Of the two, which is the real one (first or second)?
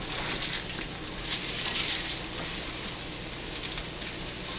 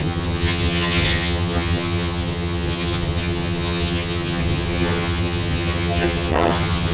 first